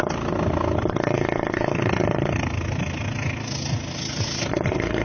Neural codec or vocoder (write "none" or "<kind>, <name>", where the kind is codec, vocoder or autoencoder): none